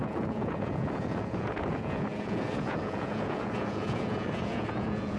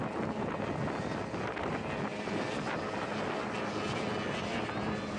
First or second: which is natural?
second